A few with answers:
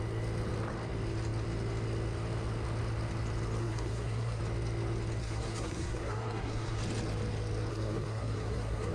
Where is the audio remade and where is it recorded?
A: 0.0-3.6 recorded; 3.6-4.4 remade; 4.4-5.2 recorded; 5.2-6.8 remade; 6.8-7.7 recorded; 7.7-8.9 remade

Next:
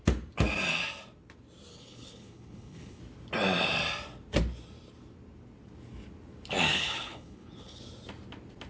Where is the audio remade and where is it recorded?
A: 0.0-1.7 recorded; 1.7-3.0 remade; 3.0-6.7 recorded; 6.7-7.8 remade; 7.8-8.7 recorded

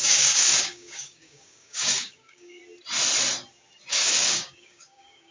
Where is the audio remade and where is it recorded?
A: 0.0-2.6 remade; 2.6-3.9 recorded; 3.9-5.3 remade

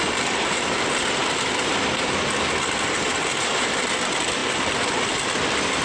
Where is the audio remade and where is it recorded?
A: 0.0-5.8 recorded